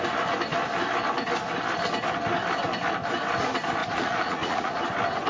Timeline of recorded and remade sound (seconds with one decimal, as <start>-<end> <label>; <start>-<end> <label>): 0.0-3.8 recorded; 3.8-4.8 remade; 4.8-5.3 recorded